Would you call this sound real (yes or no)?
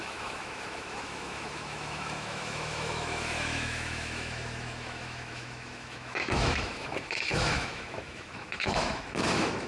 no